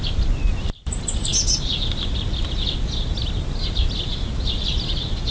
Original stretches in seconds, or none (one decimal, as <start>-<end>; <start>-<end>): 0.0-5.3